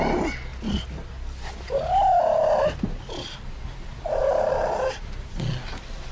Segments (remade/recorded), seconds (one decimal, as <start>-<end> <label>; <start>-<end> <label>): 0.0-6.1 recorded